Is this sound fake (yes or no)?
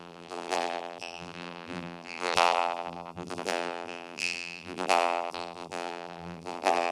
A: yes